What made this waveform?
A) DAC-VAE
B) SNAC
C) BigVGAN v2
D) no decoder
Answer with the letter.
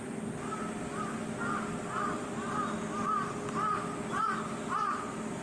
D